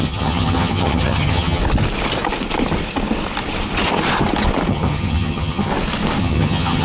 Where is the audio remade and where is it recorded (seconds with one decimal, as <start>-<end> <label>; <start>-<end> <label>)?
0.0-1.6 remade; 1.6-4.7 recorded; 4.7-5.7 remade; 5.7-6.2 recorded; 6.2-6.8 remade